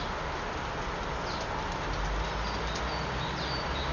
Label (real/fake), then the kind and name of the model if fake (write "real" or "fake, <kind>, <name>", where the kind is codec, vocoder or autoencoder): real